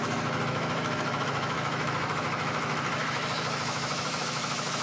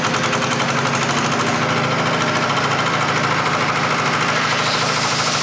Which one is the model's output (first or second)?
first